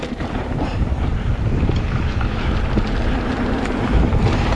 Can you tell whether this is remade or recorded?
remade